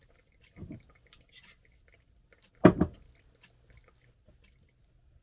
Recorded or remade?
recorded